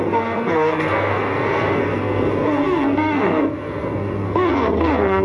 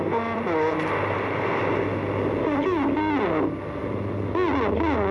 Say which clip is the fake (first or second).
first